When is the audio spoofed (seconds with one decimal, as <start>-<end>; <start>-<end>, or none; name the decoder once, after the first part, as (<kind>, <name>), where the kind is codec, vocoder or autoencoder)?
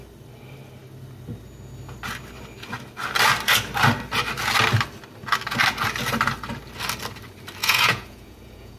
7.6-8.8 (vocoder, Vocos)